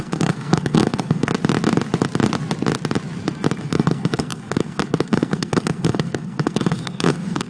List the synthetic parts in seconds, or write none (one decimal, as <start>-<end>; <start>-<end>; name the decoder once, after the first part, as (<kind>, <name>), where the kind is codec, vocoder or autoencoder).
0.0-1.3 (codec, SNAC); 3.6-7.5